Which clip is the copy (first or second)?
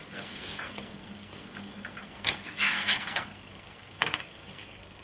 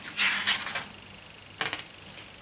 first